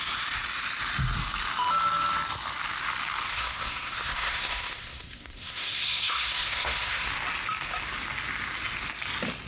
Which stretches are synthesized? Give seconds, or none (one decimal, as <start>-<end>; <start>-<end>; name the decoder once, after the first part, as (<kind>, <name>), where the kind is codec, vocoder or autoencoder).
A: 3.3-7.1 (codec, SNAC)